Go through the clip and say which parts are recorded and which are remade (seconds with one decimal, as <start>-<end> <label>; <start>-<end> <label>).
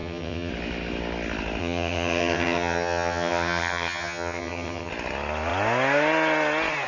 0.0-0.5 remade; 0.5-1.6 recorded; 1.6-4.9 remade; 4.9-6.9 recorded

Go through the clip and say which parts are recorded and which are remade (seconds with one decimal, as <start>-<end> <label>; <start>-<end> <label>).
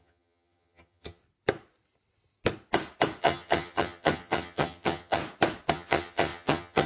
0.0-1.2 remade; 1.2-3.2 recorded; 3.2-5.2 remade; 5.2-5.7 recorded; 5.7-6.9 remade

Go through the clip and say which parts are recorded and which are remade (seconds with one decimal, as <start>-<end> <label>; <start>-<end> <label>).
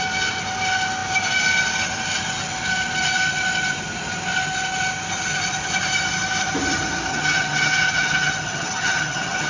0.0-7.1 recorded; 7.1-9.5 remade